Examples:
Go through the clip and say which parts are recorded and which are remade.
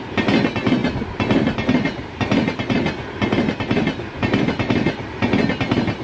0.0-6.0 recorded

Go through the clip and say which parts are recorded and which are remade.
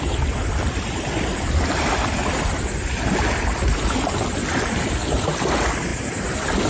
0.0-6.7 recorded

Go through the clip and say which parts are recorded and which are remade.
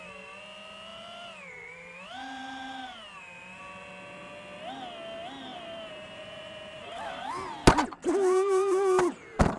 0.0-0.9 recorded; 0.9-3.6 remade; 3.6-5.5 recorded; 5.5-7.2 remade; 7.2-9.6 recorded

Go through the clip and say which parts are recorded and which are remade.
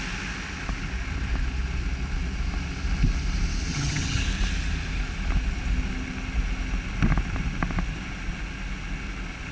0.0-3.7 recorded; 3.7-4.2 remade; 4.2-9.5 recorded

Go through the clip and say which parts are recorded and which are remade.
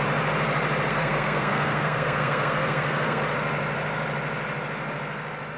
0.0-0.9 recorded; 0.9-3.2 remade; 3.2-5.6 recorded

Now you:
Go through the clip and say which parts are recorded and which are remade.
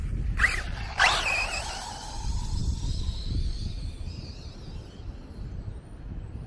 0.0-6.5 recorded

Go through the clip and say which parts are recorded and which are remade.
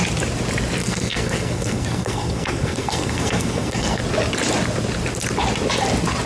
0.0-0.8 recorded; 0.8-4.0 remade; 4.0-6.3 recorded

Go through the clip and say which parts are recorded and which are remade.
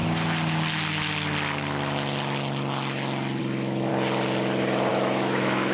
0.0-3.4 recorded; 3.4-3.9 remade; 3.9-4.9 recorded; 4.9-5.7 remade